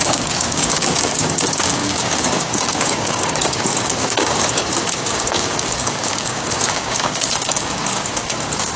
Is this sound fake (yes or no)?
yes